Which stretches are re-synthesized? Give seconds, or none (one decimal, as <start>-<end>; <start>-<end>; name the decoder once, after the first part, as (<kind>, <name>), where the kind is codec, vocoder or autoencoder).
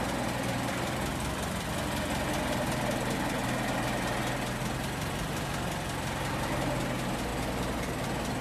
none